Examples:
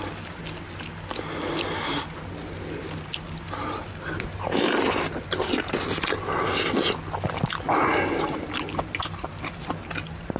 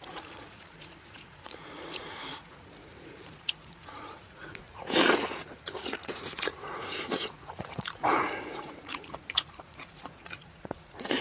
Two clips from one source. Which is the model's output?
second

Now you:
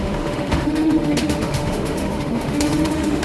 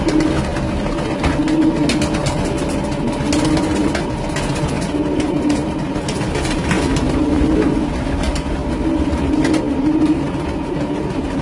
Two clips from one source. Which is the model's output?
first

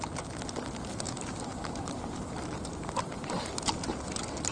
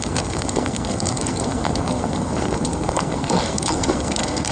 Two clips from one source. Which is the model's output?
second